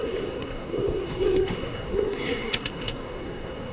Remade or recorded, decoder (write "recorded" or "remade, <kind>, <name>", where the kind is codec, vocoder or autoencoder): remade, codec, SNAC